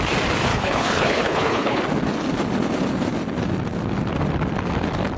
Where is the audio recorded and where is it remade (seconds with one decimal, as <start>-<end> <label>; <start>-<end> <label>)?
0.0-0.5 recorded; 0.5-1.8 remade; 1.8-5.2 recorded